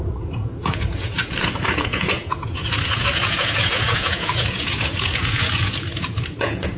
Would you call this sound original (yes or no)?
no